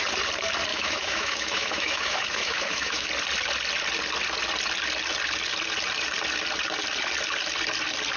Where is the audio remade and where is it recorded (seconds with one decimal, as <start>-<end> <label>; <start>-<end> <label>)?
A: 0.0-0.7 recorded; 0.7-3.1 remade; 3.1-8.2 recorded